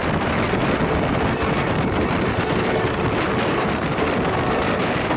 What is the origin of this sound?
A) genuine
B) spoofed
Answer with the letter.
B